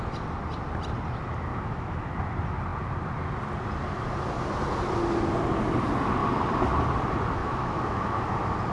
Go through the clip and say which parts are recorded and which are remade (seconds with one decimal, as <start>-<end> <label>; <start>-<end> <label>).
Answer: 0.0-1.5 recorded; 1.5-2.1 remade; 2.1-7.4 recorded; 7.4-8.2 remade; 8.2-8.7 recorded